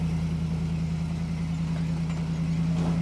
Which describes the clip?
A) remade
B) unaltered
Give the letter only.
B